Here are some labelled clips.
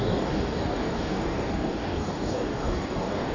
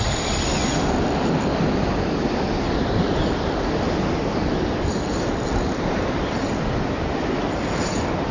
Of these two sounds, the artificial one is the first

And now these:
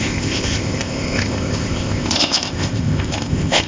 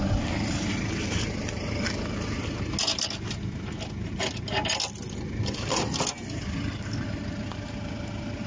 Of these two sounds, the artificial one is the first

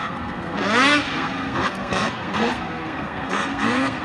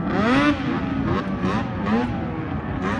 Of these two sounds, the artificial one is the first